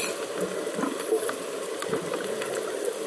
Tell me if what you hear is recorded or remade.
recorded